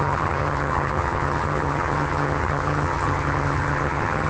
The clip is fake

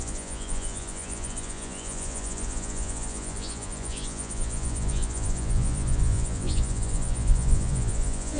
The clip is fake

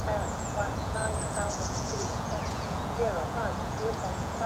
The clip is fake